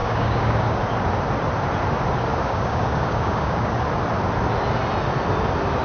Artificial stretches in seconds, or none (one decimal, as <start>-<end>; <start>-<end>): 0.0-0.8; 2.3-3.7